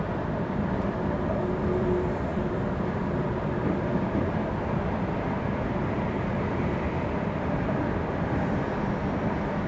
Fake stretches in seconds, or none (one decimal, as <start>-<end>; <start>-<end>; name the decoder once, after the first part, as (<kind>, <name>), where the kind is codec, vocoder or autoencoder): 0.0-9.7 (vocoder, BigVGAN v2)